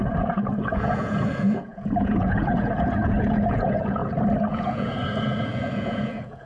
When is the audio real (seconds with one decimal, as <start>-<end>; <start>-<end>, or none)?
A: 4.0-4.5